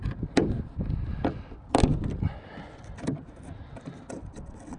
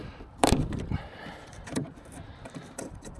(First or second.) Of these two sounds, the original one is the first